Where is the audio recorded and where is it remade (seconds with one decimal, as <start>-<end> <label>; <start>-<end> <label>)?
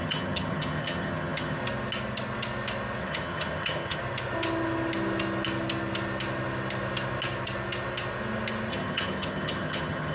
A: 0.0-1.6 remade; 1.6-3.0 recorded; 3.0-4.0 remade; 4.0-8.7 recorded; 8.7-10.1 remade